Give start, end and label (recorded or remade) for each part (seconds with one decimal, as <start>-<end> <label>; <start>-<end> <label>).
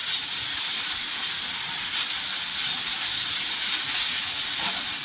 0.0-1.3 remade; 1.3-2.5 recorded; 2.5-3.7 remade; 3.7-5.0 recorded